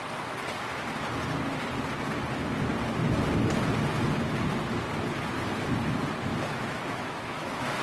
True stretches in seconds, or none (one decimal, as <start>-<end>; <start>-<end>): 0.0-6.3

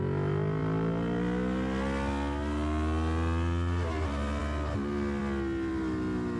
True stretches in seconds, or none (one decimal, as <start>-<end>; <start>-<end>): 0.0-6.4

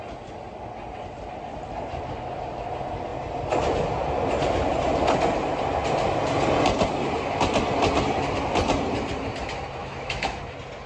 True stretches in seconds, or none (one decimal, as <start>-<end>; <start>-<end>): 0.0-9.8; 10.4-10.9

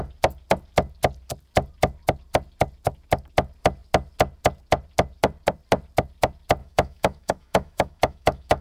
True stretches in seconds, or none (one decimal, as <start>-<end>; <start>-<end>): 0.0-6.6

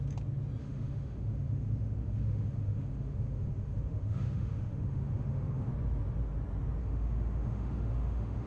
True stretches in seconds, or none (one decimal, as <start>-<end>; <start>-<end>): 0.0-0.6; 5.7-6.8